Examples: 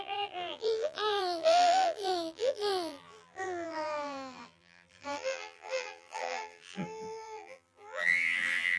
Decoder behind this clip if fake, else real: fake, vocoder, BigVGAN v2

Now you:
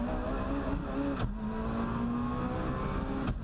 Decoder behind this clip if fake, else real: real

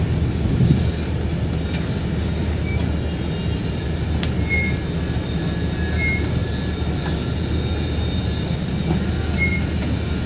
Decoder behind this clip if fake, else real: real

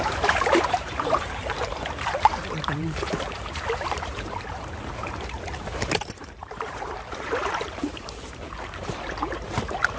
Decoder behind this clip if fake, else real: fake, vocoder, BigVGAN v2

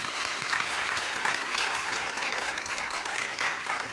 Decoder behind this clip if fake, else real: fake, codec, SNAC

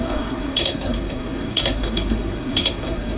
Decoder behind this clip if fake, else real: fake, codec, SNAC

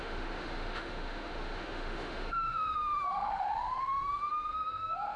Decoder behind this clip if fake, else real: fake, autoencoder, DAC-VAE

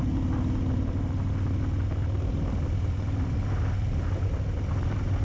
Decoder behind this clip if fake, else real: real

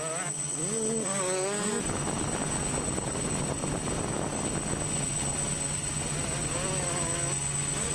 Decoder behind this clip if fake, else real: real